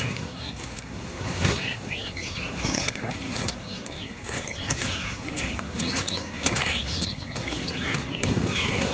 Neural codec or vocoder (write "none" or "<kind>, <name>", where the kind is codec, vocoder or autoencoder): codec, SNAC